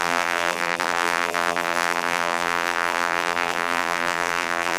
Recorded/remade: remade